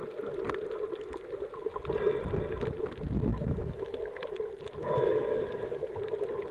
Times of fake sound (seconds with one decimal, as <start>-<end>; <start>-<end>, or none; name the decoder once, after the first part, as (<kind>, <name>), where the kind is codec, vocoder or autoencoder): 3.3-4.0 (autoencoder, DAC-VAE); 4.8-6.0